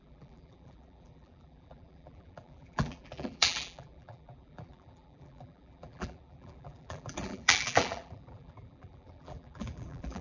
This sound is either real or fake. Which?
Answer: fake